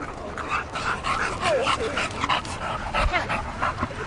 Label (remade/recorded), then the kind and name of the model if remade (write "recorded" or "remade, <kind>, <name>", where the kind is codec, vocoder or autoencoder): remade, vocoder, BigVGAN v2